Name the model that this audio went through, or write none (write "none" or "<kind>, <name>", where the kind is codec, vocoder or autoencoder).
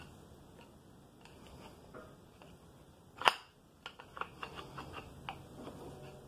none